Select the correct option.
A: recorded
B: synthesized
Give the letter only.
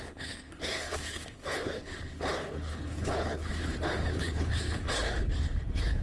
B